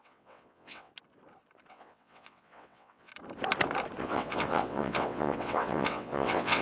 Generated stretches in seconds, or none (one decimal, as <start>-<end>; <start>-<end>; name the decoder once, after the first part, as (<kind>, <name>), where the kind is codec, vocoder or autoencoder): 0.0-0.9 (vocoder, WaveNeXt); 1.7-3.1; 4.0-6.6